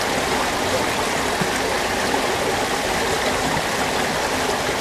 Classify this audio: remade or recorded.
recorded